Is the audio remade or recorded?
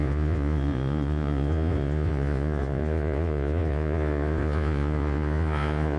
remade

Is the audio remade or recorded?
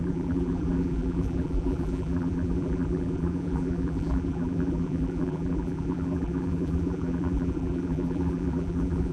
remade